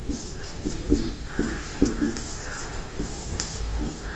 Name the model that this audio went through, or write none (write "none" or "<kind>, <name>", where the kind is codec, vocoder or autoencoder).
codec, DAC